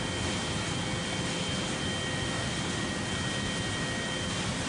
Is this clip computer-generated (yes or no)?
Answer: no